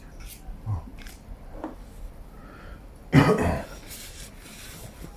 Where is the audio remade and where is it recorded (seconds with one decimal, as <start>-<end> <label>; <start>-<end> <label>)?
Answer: 0.0-0.9 recorded; 0.9-2.0 remade; 2.0-5.2 recorded